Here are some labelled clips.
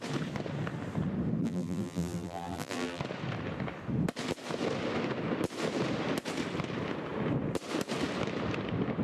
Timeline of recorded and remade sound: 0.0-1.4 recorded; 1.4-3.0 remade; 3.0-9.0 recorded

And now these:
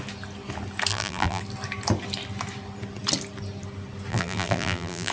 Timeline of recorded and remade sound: 0.0-0.9 recorded; 0.9-1.4 remade; 1.4-4.1 recorded; 4.1-5.1 remade

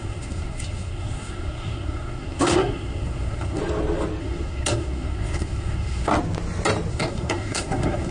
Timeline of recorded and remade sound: 0.0-3.6 remade; 3.6-4.2 recorded; 4.2-6.1 remade; 6.1-6.9 recorded; 6.9-8.1 remade

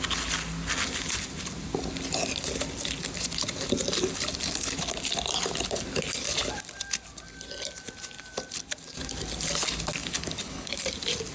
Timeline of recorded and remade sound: 0.0-10.0 recorded; 10.0-10.7 remade; 10.7-11.3 recorded

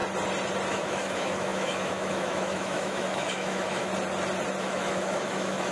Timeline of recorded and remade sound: 0.0-0.7 recorded; 0.7-3.9 remade; 3.9-4.6 recorded; 4.6-5.7 remade

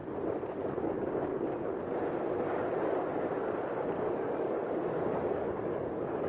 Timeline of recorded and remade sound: 0.0-0.6 recorded; 0.6-1.3 remade; 1.3-4.0 recorded; 4.0-6.3 remade

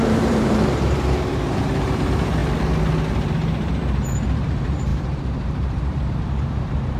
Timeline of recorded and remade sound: 0.0-2.4 remade; 2.4-3.1 recorded; 3.1-7.0 remade

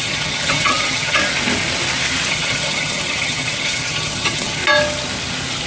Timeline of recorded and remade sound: 0.0-1.2 remade; 1.2-2.3 recorded; 2.3-4.6 remade; 4.6-5.7 recorded